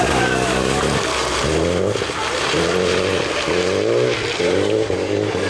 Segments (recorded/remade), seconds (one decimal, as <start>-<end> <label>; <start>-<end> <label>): 0.0-1.1 remade; 1.1-4.4 recorded; 4.4-5.5 remade